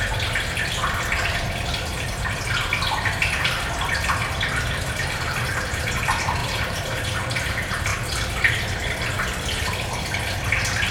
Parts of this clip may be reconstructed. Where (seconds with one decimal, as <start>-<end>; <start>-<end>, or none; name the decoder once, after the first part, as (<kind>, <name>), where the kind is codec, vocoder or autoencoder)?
3.2-3.9 (vocoder, BigVGAN v2); 6.4-7.2